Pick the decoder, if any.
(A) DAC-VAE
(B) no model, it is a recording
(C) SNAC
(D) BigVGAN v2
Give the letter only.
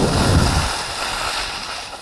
B